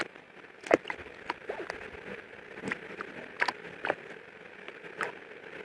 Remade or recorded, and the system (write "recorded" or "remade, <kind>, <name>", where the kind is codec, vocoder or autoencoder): recorded